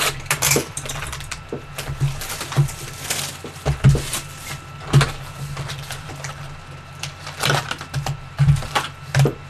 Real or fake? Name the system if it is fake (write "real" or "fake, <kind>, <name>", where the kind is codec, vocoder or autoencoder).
real